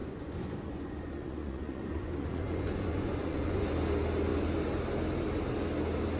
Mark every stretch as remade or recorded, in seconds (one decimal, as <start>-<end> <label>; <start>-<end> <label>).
0.0-3.6 remade; 3.6-6.2 recorded